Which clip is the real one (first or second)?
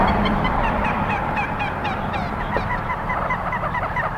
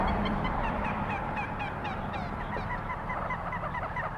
second